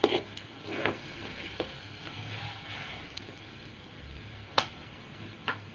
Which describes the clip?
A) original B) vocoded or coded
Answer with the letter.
B